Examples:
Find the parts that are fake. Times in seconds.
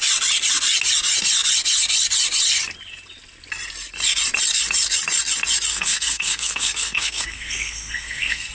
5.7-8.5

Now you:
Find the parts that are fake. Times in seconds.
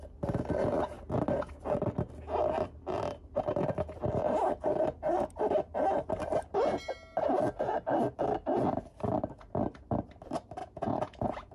10.6-11.5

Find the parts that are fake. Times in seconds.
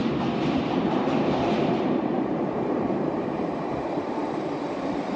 0.8-4.2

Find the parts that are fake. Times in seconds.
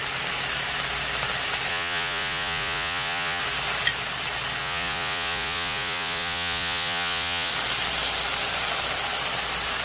1.7-3.4; 4.6-7.5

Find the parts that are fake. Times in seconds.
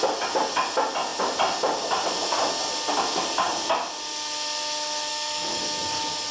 5.1-5.6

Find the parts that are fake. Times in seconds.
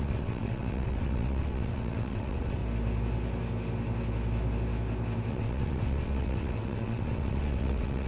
0.0-2.6; 5.3-8.1